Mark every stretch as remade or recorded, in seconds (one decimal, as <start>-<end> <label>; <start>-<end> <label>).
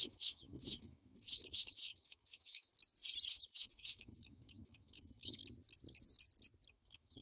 0.0-2.7 remade; 2.7-3.3 recorded; 3.3-5.4 remade; 5.4-6.7 recorded; 6.7-7.2 remade